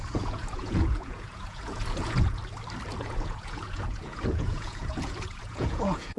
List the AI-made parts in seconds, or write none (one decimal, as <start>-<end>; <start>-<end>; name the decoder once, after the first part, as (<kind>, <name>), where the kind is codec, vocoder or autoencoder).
0.0-2.4 (vocoder, Vocos); 3.0-6.2